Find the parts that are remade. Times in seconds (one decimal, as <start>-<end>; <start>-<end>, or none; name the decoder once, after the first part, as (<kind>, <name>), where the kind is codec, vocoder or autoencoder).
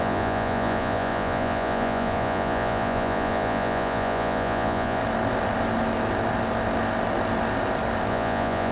0.0-5.0 (vocoder, Vocos); 8.1-8.7